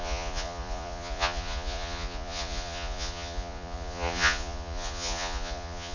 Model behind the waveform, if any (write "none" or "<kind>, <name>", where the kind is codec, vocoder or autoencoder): vocoder, Vocos